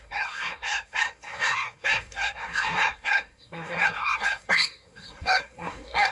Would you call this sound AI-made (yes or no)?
yes